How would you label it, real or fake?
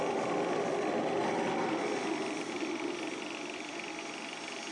real